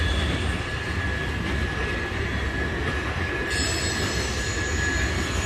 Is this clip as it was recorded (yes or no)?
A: yes